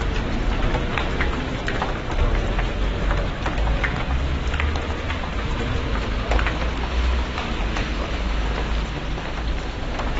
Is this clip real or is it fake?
real